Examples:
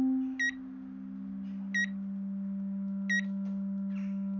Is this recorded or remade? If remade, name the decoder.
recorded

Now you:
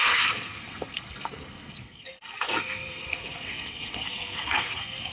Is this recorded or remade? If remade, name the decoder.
remade, codec, SNAC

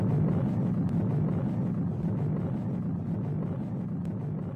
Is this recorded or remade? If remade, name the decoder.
recorded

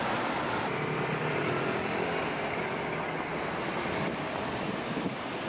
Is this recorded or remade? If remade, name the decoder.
recorded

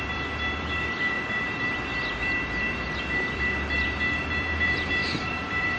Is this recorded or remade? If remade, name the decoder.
remade, vocoder, BigVGAN v2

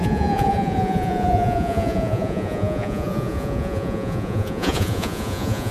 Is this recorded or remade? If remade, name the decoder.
remade, vocoder, Vocos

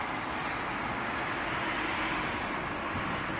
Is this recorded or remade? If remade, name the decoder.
recorded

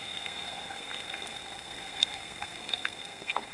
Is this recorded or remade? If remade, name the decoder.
remade, codec, SNAC